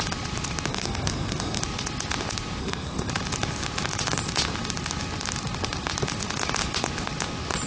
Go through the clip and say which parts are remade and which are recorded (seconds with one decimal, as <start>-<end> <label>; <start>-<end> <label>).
0.0-0.7 recorded; 0.7-1.6 remade; 1.6-2.6 recorded; 2.6-3.1 remade; 3.1-7.7 recorded